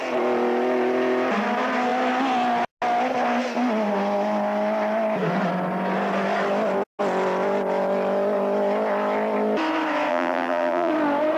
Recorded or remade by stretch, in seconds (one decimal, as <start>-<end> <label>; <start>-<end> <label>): 0.0-10.1 recorded; 10.1-10.9 remade; 10.9-11.4 recorded